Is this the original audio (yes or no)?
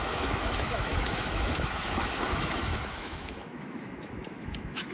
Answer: no